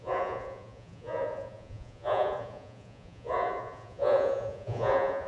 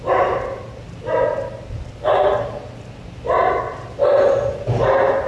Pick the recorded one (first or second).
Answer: second